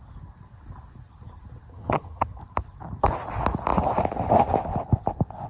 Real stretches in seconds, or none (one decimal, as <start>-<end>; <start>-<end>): 0.0-1.7; 2.4-5.5